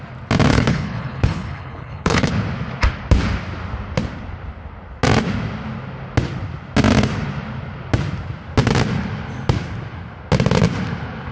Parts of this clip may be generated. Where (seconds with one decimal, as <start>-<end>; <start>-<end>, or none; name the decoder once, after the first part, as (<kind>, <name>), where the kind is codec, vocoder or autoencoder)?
0.5-2.3 (codec, HILCodec)